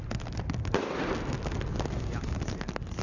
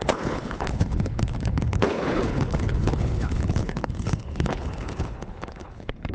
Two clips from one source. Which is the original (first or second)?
first